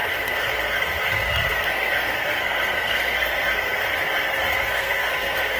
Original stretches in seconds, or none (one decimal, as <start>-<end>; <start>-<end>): 3.9-4.4